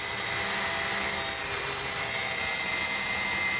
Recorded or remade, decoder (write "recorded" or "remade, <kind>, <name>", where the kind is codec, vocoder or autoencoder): recorded